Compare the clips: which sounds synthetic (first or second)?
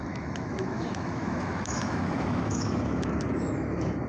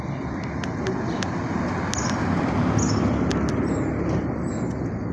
first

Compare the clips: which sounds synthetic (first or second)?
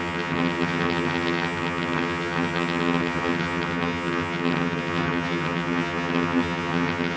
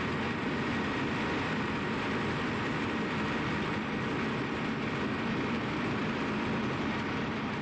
first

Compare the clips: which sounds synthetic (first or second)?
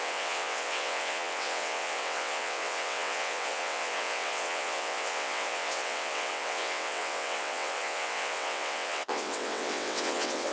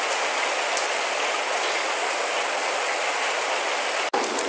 first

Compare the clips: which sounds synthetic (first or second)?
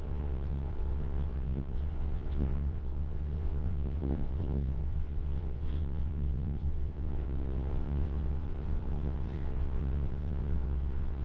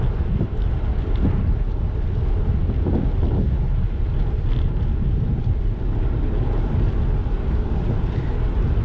first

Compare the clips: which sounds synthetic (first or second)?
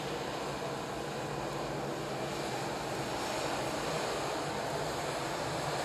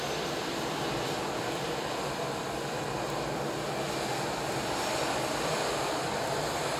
second